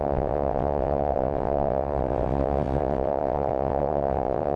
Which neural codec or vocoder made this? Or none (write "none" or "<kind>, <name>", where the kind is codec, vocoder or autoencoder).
vocoder, WaveNeXt